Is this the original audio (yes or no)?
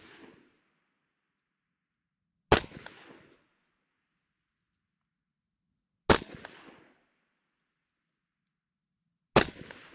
yes